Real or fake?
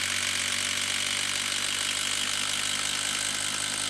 real